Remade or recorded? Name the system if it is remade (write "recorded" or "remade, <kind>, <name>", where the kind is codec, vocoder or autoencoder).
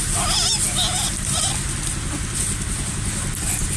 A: recorded